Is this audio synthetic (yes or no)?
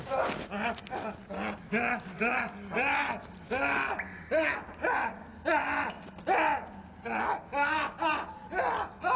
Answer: no